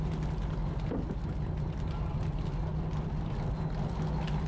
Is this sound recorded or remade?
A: recorded